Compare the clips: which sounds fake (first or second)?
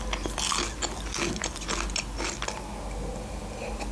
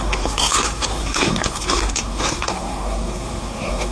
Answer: second